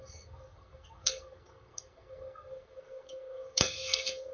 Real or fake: fake